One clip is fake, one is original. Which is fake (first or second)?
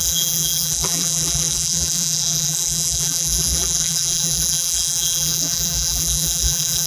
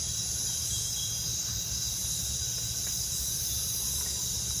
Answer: first